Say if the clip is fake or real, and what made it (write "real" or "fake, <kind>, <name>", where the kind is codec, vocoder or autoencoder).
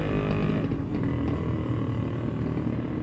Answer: real